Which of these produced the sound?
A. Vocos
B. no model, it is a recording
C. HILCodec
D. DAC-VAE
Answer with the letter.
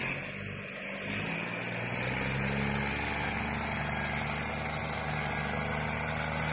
B